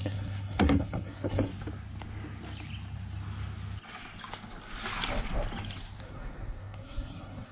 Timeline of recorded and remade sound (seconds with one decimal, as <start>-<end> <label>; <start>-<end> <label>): 0.0-1.5 remade; 1.5-6.0 recorded; 6.0-7.5 remade